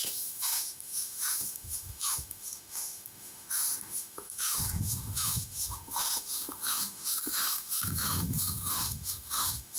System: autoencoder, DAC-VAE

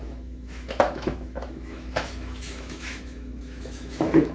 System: autoencoder, DAC-VAE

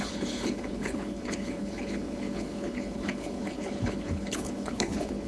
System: codec, HILCodec